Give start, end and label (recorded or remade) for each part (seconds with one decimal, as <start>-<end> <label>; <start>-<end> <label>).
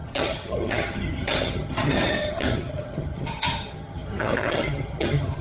0.0-5.4 remade